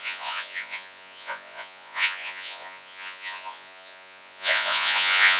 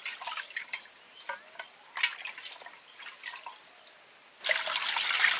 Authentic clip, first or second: second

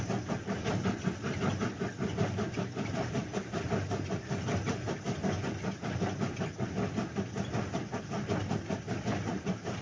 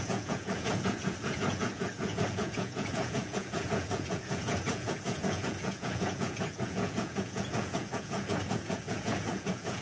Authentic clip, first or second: first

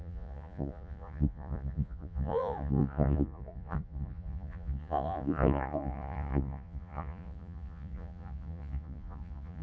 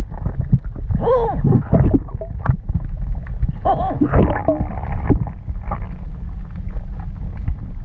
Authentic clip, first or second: second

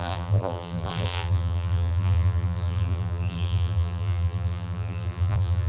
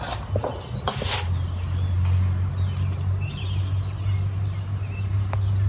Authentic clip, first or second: second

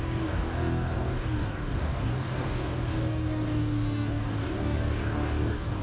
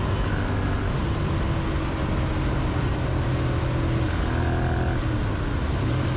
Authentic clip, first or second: second